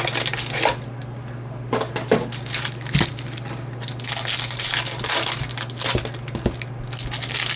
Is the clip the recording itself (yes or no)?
yes